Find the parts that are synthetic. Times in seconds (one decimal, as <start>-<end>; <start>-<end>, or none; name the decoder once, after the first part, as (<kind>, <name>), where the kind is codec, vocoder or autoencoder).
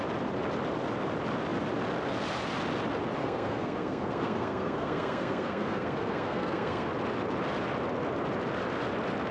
3.2-6.9 (codec, SNAC)